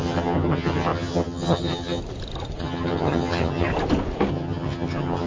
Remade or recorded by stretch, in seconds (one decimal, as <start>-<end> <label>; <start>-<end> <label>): 0.0-2.0 remade; 2.0-2.6 recorded; 2.6-3.7 remade; 3.7-4.3 recorded; 4.3-5.3 remade